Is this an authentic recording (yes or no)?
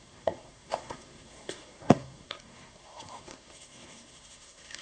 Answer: no